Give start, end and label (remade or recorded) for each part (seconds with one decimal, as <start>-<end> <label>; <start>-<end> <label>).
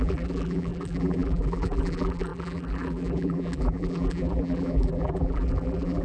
0.0-6.0 remade